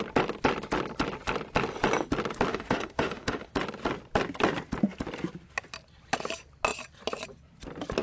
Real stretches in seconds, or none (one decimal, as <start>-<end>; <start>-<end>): 0.0-2.5; 3.5-8.0